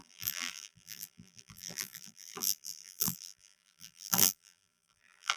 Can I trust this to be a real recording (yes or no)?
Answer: no